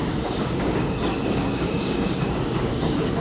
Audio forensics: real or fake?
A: fake